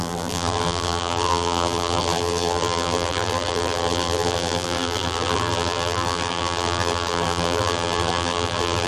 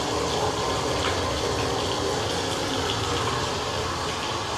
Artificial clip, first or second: first